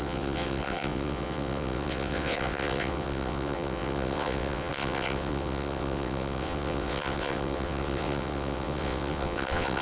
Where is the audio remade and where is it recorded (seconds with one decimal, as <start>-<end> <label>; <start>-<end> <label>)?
0.0-9.8 remade